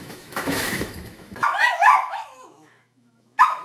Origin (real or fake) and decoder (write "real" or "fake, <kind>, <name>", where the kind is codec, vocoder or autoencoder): fake, autoencoder, DAC-VAE